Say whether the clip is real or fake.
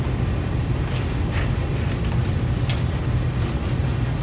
real